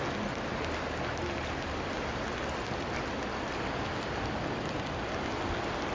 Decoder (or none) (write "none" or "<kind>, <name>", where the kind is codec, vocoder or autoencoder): none